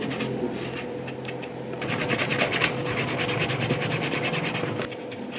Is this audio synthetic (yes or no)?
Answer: no